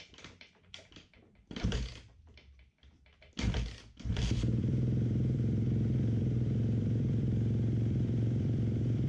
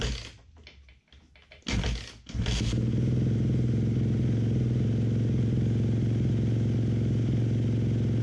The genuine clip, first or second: second